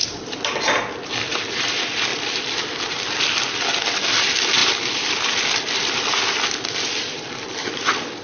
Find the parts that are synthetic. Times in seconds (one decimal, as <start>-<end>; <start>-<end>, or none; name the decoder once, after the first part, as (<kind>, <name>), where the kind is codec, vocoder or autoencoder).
0.0-2.1 (vocoder, BigVGAN v2); 2.9-8.2